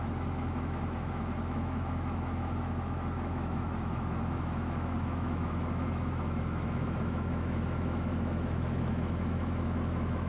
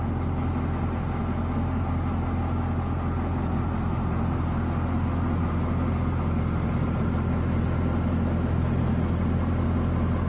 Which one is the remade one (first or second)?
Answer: first